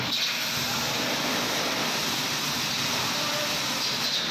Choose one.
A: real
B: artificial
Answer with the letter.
A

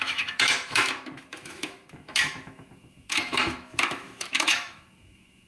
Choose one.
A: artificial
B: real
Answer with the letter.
A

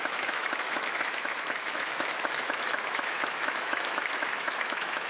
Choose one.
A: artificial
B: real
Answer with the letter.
A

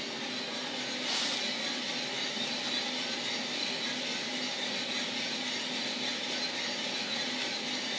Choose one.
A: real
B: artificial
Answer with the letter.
A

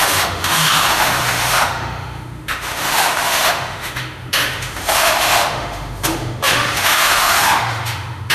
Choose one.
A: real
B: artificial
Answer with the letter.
B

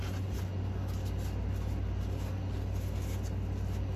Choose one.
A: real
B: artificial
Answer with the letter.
A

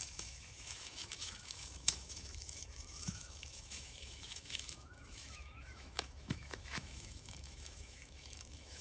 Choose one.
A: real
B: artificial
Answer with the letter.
B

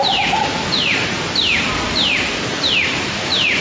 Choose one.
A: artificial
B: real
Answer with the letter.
B